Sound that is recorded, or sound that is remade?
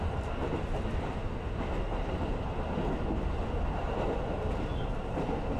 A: recorded